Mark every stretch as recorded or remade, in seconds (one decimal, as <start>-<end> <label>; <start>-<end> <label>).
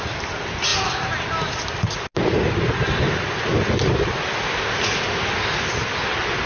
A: 0.0-6.5 recorded